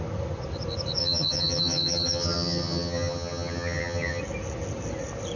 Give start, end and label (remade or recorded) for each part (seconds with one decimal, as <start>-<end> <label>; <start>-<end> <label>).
0.0-1.0 recorded; 1.0-4.2 remade; 4.2-5.4 recorded